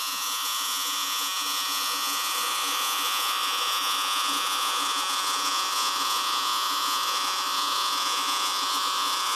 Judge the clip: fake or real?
fake